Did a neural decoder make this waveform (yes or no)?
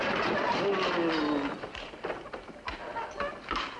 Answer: no